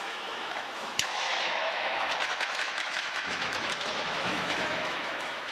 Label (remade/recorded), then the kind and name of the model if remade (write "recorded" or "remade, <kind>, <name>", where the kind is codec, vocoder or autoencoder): remade, autoencoder, DAC-VAE